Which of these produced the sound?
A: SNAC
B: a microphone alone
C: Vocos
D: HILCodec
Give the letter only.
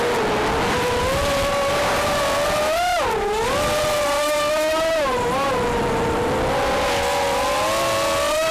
B